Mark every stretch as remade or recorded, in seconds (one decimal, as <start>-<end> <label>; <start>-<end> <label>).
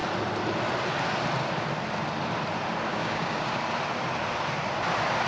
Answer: 0.0-2.9 recorded; 2.9-3.6 remade; 3.6-5.3 recorded